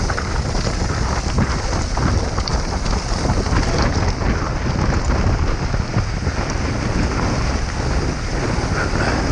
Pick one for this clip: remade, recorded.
recorded